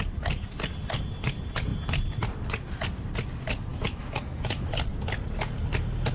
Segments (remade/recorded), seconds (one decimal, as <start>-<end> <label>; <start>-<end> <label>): 0.0-3.7 recorded; 3.7-4.7 remade; 4.7-6.1 recorded